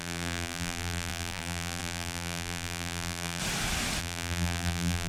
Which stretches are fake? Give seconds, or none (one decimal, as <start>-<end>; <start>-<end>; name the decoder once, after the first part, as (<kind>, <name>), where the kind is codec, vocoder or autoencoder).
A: 0.0-3.4 (vocoder, BigVGAN v2); 4.0-5.1